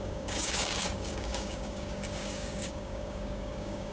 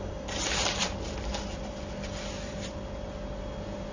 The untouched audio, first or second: second